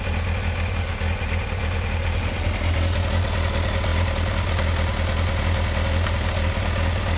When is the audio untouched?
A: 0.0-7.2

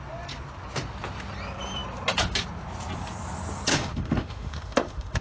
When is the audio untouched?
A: 0.0-3.7

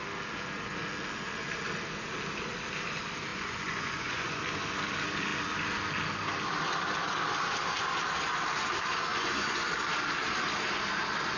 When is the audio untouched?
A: 0.0-3.3; 4.4-9.1; 9.7-11.4

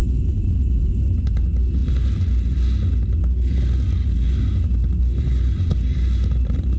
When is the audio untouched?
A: 0.0-6.8